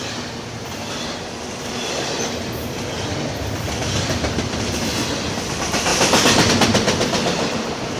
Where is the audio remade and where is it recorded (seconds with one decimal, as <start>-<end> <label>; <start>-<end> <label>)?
0.0-5.9 recorded; 5.9-6.5 remade; 6.5-8.0 recorded